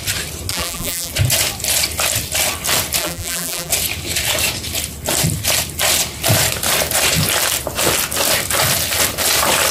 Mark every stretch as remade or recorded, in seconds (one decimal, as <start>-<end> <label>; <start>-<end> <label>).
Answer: 0.0-0.5 recorded; 0.5-1.1 remade; 1.1-3.0 recorded; 3.0-3.7 remade; 3.7-9.7 recorded